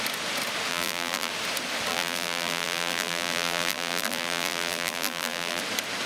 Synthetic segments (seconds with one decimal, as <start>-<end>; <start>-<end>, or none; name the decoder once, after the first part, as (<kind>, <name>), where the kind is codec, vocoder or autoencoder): 0.7-1.3 (vocoder, BigVGAN v2); 1.9-5.6